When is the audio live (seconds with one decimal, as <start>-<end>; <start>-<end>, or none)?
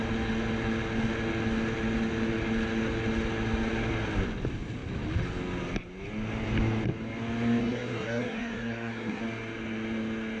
0.0-7.6; 9.2-10.4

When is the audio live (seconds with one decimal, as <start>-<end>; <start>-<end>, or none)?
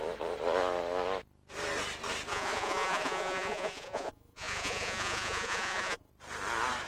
0.0-2.3; 6.1-6.9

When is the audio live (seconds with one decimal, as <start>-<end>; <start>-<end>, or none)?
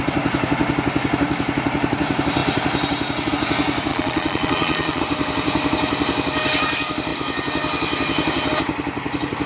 0.0-3.9; 5.0-9.5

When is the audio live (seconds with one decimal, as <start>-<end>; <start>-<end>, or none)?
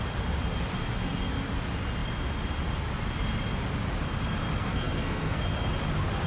0.0-4.6; 5.4-6.3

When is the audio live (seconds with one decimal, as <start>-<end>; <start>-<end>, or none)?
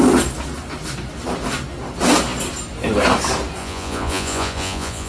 0.0-3.6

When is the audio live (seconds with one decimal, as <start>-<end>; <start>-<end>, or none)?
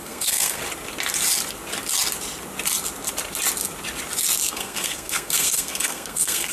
0.6-4.5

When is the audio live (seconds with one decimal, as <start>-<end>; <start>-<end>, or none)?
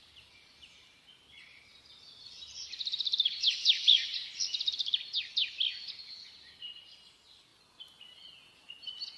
1.7-2.6; 4.1-6.8; 7.5-9.2